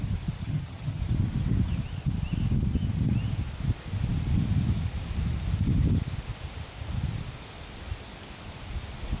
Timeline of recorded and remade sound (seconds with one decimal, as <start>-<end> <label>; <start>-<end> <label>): 0.0-0.4 recorded; 0.4-1.0 remade; 1.0-9.2 recorded